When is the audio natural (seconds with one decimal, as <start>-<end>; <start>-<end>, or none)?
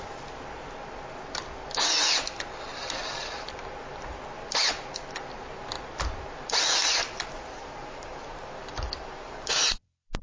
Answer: 0.0-2.7; 3.7-7.0; 9.5-10.2